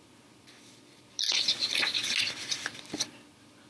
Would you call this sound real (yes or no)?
yes